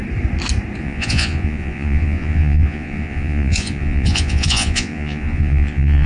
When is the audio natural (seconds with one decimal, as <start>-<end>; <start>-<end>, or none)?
0.0-0.8